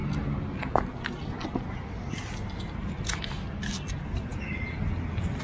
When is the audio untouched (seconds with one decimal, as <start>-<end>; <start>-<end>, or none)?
0.0-5.4